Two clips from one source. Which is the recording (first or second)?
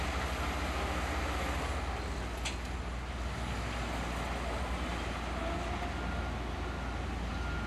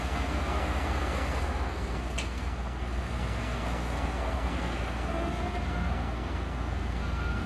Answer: first